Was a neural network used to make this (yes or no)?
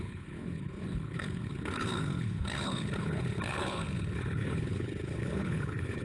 yes